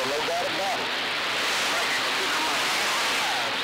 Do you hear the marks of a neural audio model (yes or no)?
no